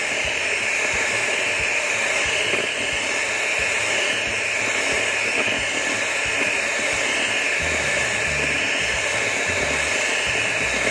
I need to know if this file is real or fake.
real